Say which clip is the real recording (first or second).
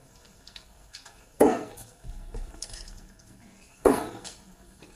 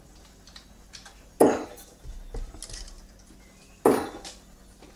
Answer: second